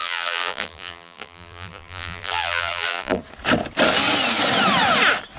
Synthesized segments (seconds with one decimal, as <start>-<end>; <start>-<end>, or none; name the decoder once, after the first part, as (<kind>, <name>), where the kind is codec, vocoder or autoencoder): 0.0-3.2 (vocoder, BigVGAN v2)